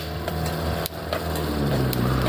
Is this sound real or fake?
fake